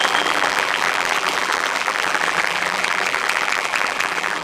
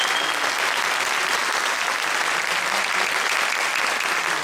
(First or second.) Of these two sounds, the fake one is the first